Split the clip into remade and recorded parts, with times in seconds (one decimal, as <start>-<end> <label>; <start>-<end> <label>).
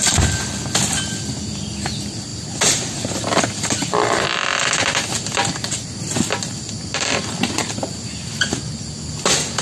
0.0-9.6 recorded